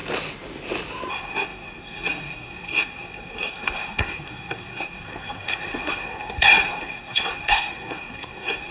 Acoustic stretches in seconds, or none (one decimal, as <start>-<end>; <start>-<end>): 0.0-1.1